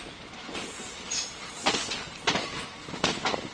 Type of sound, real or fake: real